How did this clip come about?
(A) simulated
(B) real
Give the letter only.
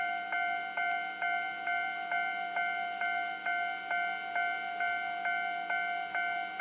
B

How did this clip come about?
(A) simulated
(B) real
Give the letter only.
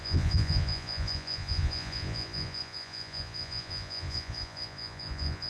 A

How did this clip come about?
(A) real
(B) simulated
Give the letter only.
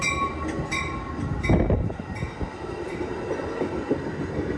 A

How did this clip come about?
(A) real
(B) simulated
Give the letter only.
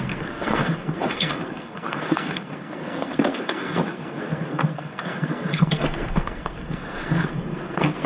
B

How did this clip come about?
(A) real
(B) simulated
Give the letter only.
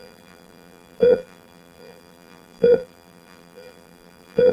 B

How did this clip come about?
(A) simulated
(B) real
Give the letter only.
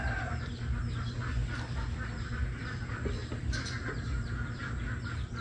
B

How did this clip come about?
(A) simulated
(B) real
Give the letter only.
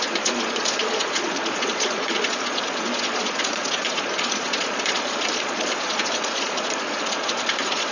A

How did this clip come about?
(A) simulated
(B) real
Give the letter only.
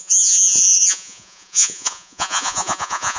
A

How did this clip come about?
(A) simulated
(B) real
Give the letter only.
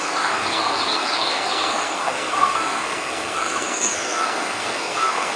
A